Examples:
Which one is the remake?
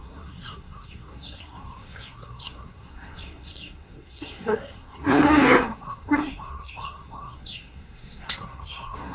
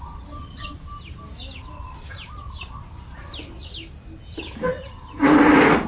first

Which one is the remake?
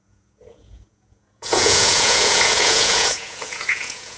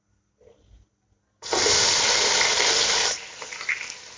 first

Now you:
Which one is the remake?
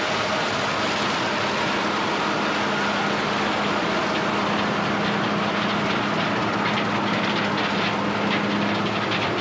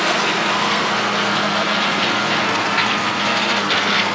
second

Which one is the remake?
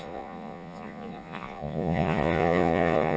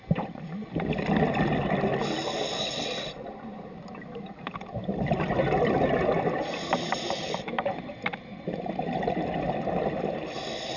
first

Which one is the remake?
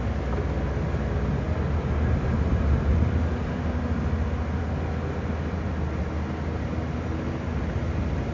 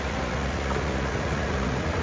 second